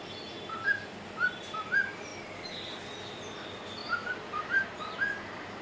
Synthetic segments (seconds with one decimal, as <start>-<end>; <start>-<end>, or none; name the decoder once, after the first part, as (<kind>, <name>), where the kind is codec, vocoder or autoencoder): 3.8-4.8 (vocoder, BigVGAN v2)